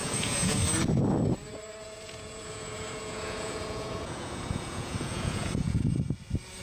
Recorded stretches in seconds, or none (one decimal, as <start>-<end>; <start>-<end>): 0.6-1.8; 5.8-6.6